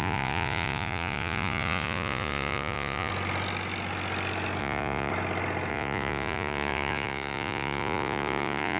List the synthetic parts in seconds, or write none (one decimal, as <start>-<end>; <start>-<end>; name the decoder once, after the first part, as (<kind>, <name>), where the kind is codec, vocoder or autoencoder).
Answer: 0.0-3.1 (vocoder, Vocos); 4.6-5.1; 5.7-8.8